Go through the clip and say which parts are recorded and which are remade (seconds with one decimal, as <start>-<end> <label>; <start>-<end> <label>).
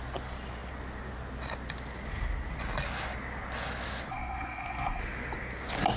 0.0-4.1 recorded; 4.1-5.0 remade; 5.0-6.0 recorded